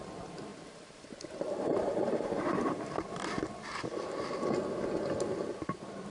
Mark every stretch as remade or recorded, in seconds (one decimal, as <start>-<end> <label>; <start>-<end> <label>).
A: 0.0-0.5 recorded; 0.5-3.2 remade; 3.2-6.1 recorded